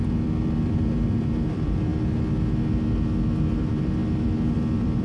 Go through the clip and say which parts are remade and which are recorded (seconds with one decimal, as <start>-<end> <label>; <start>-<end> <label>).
0.0-1.9 remade; 1.9-3.5 recorded; 3.5-4.0 remade; 4.0-4.5 recorded; 4.5-5.0 remade